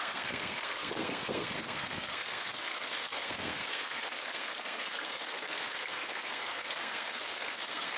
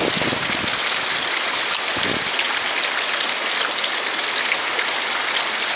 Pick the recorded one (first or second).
second